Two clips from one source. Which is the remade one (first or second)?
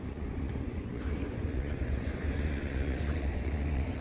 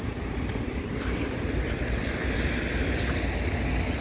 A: first